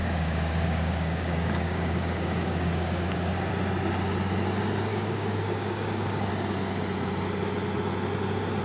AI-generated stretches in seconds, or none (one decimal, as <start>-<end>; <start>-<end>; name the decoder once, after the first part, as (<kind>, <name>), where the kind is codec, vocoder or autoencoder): 0.0-3.5 (codec, DAC); 4.9-6.3